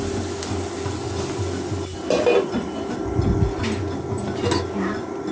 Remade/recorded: recorded